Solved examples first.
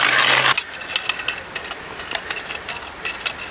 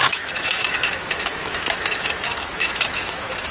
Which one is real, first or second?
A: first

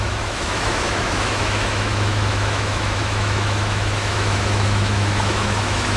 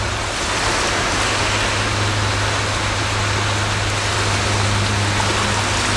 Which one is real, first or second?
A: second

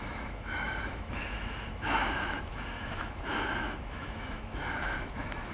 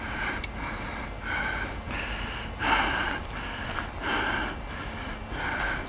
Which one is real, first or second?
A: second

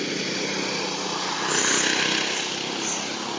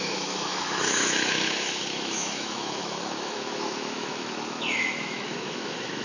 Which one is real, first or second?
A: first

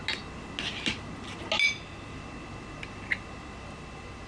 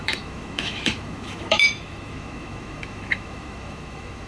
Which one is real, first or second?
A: first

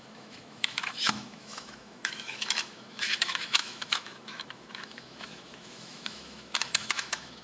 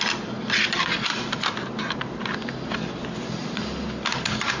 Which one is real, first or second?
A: second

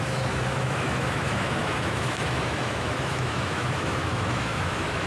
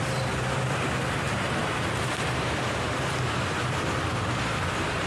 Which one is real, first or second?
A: second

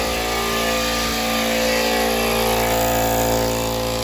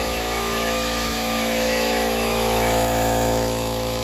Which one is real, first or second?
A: first